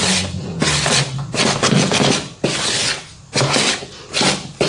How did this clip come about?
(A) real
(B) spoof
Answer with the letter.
A